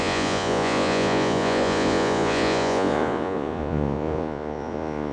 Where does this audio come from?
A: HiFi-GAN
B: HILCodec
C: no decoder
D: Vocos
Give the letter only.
D